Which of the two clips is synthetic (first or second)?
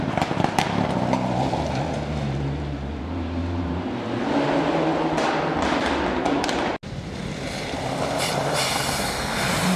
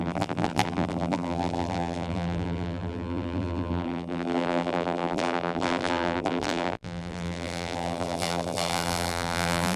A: second